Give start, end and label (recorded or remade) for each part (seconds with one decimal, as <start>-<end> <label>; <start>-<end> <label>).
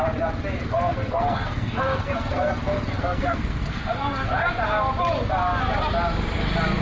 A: 0.0-0.6 recorded; 0.6-4.3 remade; 4.3-6.8 recorded